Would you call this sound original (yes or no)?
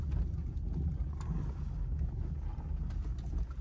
yes